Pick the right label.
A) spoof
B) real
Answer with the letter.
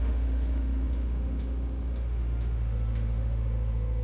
A